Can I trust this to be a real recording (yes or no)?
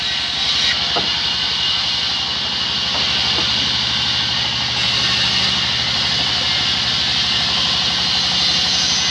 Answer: yes